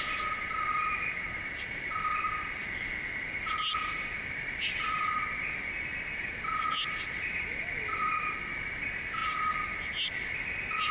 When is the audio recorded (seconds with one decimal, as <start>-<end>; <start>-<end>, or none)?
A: 0.0-10.9